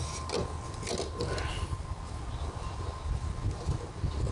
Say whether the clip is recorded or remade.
recorded